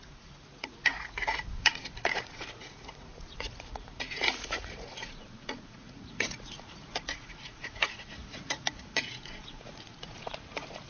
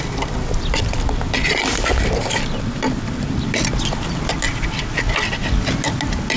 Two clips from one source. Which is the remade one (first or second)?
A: first